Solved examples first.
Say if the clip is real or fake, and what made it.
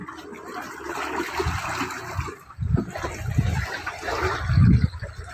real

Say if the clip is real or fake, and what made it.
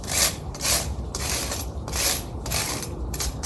fake, vocoder, BigVGAN v2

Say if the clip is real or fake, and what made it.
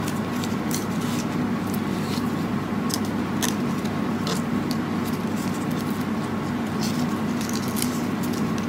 real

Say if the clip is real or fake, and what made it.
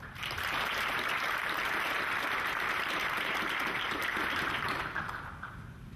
fake, vocoder, BigVGAN v2